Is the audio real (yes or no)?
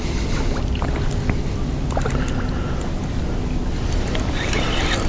yes